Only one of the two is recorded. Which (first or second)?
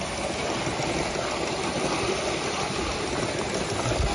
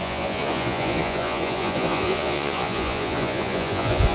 first